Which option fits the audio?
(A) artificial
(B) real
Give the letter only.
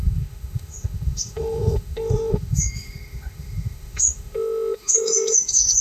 A